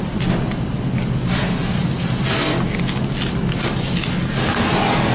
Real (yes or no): yes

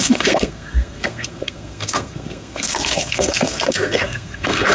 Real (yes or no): no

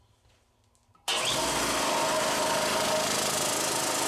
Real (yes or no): yes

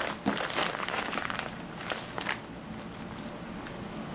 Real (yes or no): yes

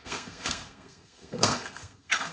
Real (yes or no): no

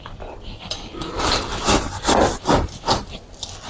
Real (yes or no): yes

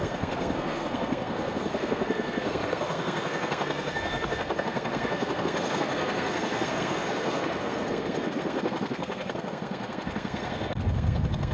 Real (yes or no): no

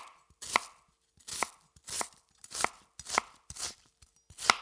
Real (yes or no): yes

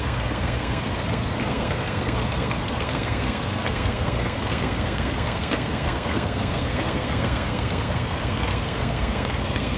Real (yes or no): no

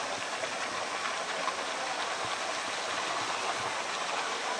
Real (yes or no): yes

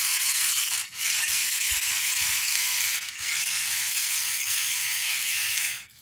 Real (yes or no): no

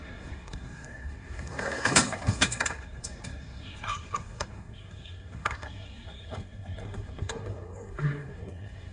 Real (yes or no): no